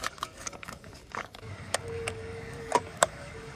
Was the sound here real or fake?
fake